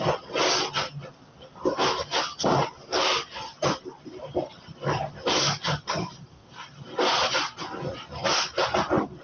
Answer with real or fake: real